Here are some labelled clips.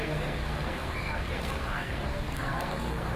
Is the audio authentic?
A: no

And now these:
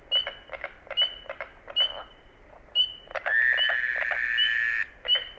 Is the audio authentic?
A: yes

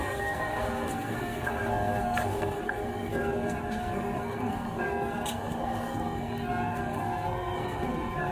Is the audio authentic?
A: no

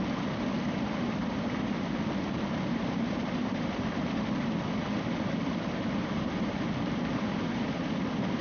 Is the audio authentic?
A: yes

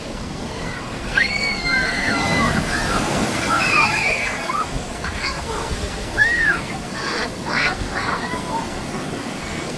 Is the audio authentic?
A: no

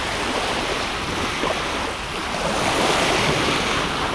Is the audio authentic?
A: yes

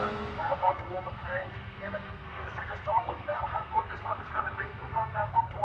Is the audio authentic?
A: no